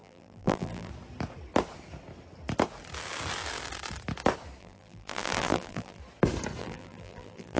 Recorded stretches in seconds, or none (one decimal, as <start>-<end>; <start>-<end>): 0.9-4.6; 6.0-6.6